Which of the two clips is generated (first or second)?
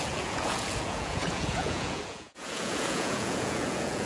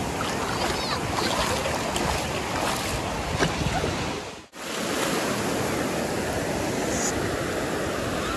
first